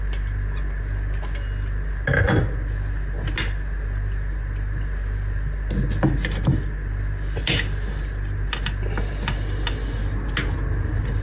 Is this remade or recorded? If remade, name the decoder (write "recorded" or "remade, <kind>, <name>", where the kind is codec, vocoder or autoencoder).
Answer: recorded